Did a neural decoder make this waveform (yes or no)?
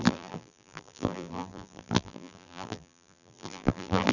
yes